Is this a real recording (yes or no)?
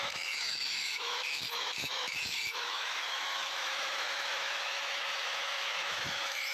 no